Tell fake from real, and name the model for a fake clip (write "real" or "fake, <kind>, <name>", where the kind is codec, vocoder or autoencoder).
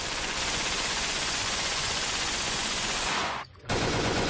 fake, vocoder, Vocos